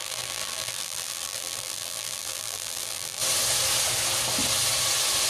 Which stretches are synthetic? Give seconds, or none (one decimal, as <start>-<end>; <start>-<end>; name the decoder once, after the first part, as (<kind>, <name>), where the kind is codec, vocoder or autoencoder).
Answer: 0.0-3.2 (vocoder, BigVGAN v2)